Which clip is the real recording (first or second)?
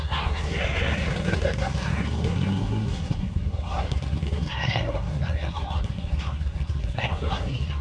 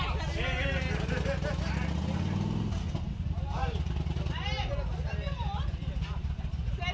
second